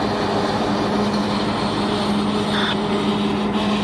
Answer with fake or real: real